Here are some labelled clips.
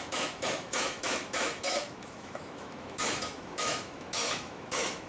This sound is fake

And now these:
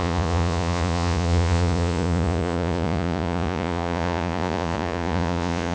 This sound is fake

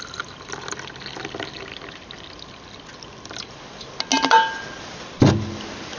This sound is real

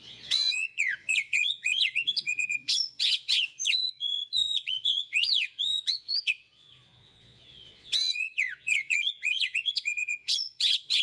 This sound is fake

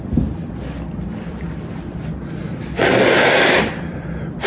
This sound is fake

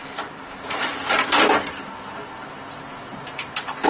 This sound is real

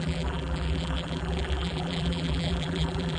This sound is fake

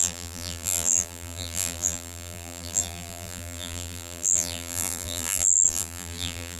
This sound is fake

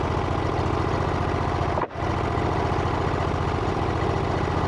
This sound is real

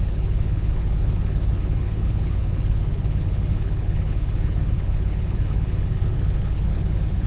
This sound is fake